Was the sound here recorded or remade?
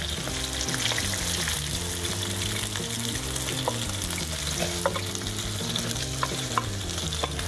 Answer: recorded